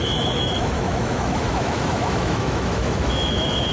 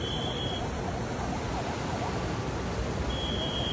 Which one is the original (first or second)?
second